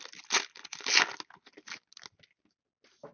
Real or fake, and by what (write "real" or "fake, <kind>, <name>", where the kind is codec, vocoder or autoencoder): real